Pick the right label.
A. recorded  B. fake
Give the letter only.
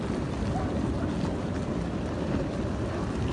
A